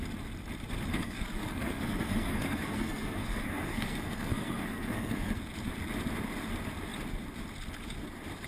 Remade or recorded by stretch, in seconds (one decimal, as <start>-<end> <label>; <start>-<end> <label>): 0.0-0.9 recorded; 0.9-5.4 remade; 5.4-8.5 recorded